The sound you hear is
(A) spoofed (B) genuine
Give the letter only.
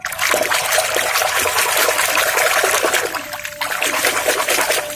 B